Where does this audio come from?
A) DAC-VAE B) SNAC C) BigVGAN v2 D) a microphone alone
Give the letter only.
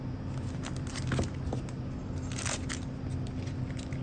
D